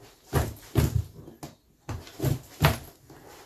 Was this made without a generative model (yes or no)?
yes